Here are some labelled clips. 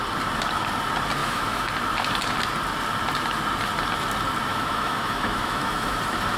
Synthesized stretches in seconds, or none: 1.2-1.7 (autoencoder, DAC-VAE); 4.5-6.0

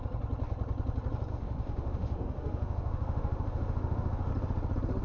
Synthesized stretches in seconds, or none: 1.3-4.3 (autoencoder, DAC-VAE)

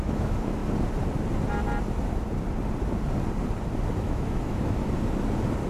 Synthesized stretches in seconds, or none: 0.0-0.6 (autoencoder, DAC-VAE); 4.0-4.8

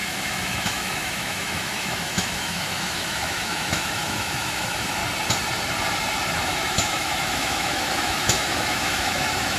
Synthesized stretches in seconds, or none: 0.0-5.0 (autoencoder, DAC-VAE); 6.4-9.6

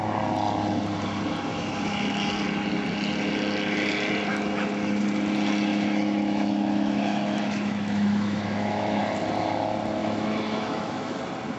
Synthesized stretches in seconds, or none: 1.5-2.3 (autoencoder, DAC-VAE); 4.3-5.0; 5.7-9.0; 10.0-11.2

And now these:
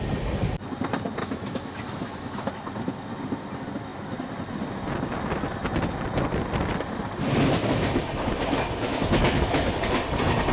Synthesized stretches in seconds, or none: 1.2-2.5 (autoencoder, DAC-VAE); 8.9-9.7

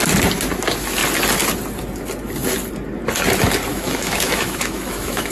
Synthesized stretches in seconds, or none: 3.7-5.3 (autoencoder, DAC-VAE)